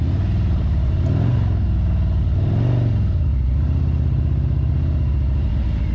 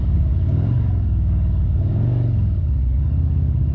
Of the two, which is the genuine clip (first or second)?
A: first